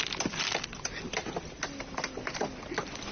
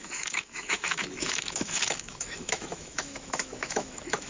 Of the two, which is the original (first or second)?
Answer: first